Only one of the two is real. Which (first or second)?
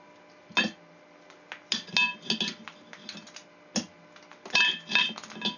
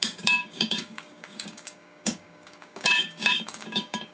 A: first